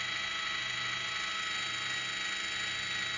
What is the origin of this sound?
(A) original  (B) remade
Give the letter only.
A